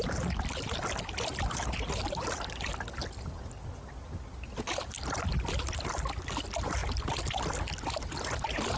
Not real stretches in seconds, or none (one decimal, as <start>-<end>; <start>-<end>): none